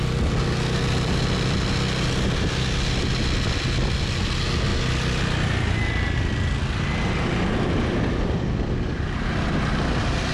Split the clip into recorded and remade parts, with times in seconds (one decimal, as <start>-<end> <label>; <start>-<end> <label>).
0.0-10.3 recorded